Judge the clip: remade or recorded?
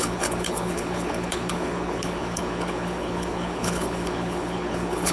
remade